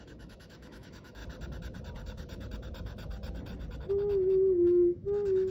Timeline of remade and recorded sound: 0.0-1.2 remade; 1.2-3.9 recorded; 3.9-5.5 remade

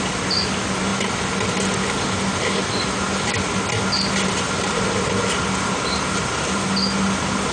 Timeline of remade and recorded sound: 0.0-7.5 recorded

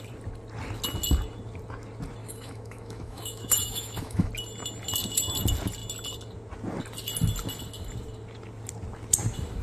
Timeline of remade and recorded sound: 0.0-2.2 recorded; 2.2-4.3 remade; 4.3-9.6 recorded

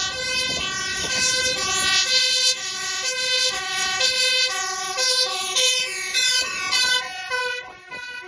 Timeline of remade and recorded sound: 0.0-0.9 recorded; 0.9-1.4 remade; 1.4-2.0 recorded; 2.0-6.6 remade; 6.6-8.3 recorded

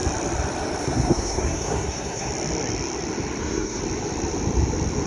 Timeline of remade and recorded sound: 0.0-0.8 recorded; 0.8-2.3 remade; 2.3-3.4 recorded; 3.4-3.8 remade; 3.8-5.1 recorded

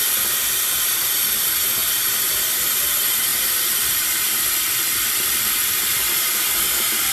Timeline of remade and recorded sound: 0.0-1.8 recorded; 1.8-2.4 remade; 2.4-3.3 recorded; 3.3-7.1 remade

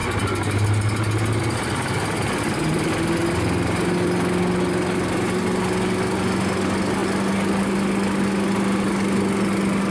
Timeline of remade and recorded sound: 0.0-9.9 recorded